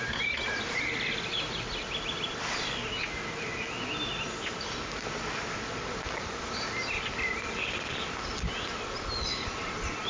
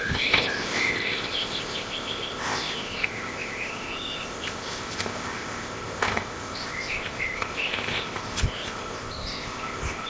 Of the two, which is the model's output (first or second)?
second